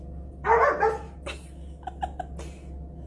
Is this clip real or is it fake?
real